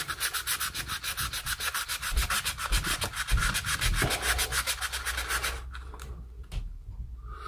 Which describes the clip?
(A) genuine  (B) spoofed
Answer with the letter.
A